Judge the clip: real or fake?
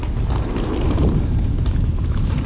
real